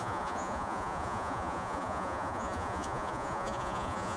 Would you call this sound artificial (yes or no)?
yes